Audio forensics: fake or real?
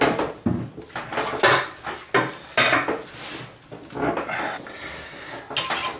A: real